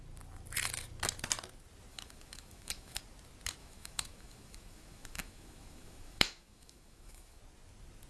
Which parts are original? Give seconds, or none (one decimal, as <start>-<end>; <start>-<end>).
0.0-1.9; 3.0-3.6; 7.4-8.1

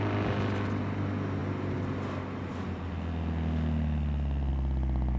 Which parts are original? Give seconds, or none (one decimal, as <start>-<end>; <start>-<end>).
0.0-5.2

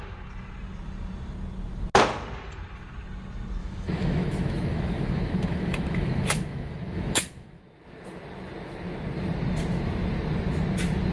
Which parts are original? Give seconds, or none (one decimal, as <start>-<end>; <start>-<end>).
0.0-3.6; 7.6-11.1

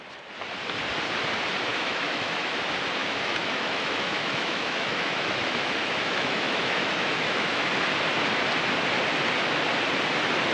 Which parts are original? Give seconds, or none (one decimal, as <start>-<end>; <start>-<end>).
0.0-1.7; 2.6-3.0; 7.7-10.5